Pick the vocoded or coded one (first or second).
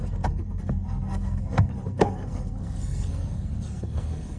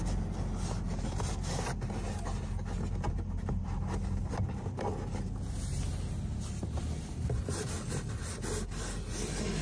first